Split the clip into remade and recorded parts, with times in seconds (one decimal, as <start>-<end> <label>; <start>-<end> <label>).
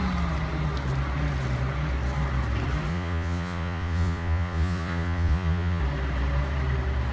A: 0.0-2.9 recorded; 2.9-5.8 remade; 5.8-7.1 recorded